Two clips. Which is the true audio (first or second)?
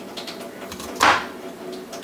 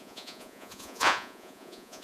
first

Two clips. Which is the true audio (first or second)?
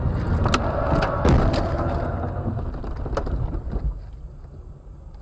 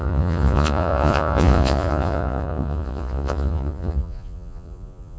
first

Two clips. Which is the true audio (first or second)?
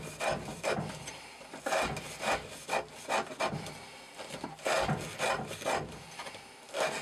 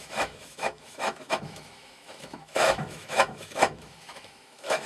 first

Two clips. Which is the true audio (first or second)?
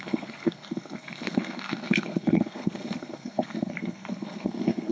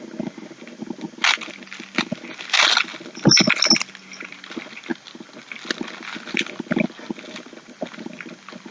second